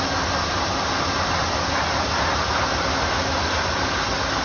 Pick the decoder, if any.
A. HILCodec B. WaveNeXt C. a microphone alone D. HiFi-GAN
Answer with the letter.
C